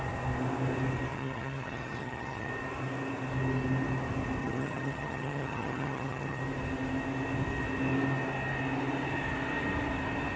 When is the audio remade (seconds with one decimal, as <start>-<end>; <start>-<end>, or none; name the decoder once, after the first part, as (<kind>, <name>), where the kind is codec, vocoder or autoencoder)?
1.1-2.5 (vocoder, HiFi-GAN); 4.4-6.4